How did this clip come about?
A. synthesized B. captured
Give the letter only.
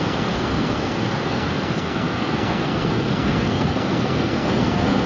A